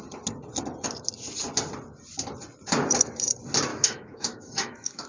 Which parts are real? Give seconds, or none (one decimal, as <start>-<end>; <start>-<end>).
0.0-3.7